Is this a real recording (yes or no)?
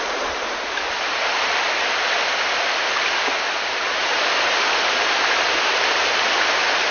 yes